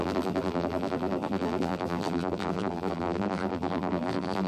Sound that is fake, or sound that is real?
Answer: fake